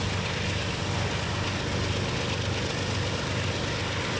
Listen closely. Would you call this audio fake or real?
real